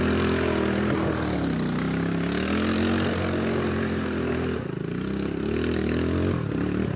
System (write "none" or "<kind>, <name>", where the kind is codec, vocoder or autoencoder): none